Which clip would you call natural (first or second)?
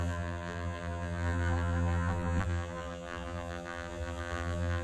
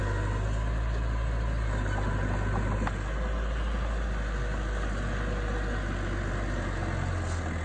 second